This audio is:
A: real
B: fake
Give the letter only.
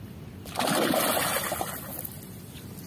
A